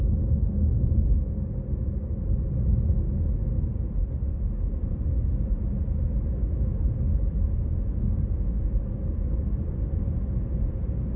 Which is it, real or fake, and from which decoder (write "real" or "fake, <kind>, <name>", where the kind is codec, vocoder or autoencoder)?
real